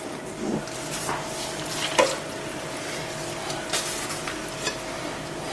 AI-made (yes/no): no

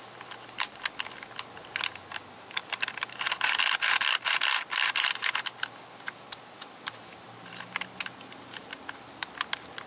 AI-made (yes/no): no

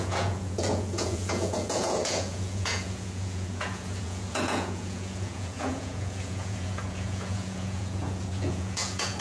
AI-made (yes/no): yes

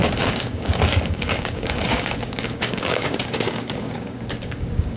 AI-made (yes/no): yes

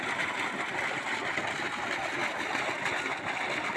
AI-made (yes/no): no